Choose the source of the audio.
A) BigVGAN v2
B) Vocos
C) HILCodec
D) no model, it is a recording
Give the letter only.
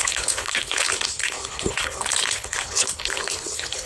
C